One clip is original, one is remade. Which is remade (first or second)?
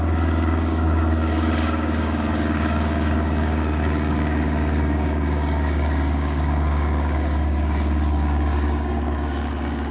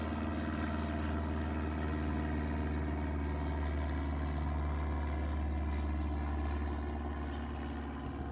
first